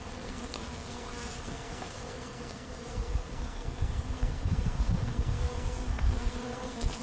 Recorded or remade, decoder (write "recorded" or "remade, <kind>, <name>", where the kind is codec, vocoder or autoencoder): remade, codec, SNAC